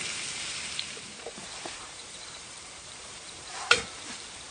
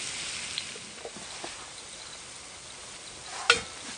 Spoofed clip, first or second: first